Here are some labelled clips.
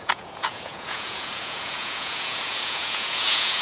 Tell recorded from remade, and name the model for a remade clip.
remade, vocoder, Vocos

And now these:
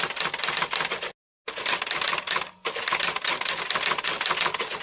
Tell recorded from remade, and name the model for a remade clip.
recorded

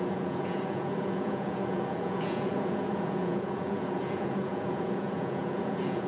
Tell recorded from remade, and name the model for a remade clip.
remade, vocoder, Vocos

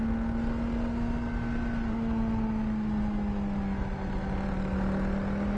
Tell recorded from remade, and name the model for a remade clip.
recorded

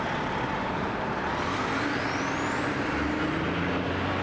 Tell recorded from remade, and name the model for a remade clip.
recorded